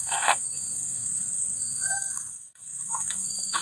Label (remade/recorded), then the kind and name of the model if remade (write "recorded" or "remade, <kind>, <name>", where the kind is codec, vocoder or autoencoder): remade, codec, SNAC